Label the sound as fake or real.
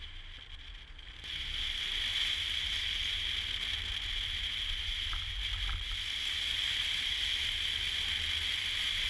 real